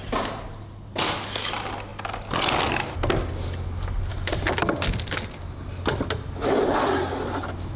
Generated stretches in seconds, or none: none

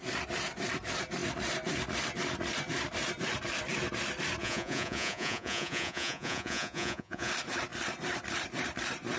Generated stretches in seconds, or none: 4.4-7.3 (vocoder, Vocos)

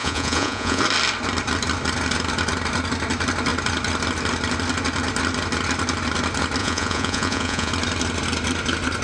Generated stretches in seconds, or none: 0.0-0.8 (vocoder, Vocos); 6.6-7.7

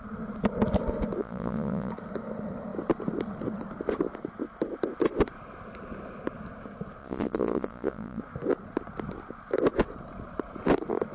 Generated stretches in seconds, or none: 1.2-1.9 (vocoder, Vocos); 7.0-8.2

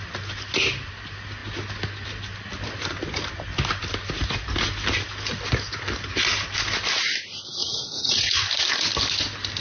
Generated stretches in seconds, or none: 7.6-8.3 (vocoder, Vocos)

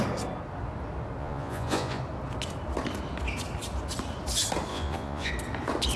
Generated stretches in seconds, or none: 1.2-2.0 (vocoder, Vocos); 4.7-5.3

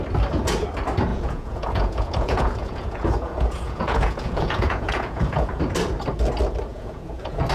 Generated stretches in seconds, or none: 1.1-5.6 (vocoder, Vocos); 6.7-7.5

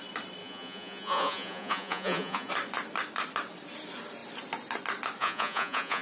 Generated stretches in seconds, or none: 0.4-2.5 (vocoder, Vocos); 5.2-6.0